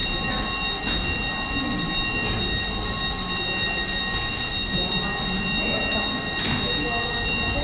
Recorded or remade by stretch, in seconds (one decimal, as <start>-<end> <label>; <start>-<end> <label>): 0.0-7.6 recorded